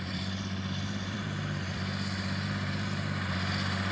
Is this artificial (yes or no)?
yes